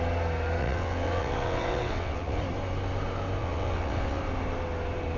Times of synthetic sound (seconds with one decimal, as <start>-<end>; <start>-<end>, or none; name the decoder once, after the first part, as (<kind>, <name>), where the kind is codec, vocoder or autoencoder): 0.6-2.4 (vocoder, WaveNeXt); 3.4-4.2